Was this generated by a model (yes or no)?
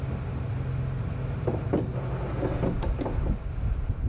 no